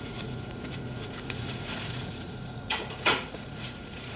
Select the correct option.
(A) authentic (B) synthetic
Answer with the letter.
B